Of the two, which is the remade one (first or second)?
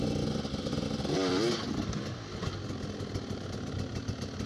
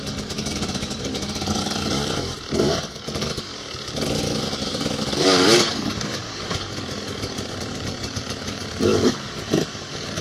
second